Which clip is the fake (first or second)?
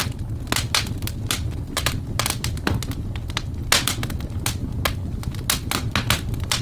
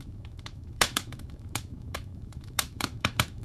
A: second